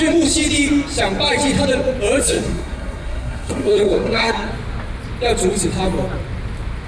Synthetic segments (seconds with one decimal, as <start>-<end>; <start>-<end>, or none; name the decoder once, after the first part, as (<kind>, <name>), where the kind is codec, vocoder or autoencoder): 2.2-4.5 (codec, SNAC)